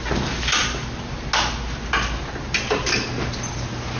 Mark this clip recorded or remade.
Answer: recorded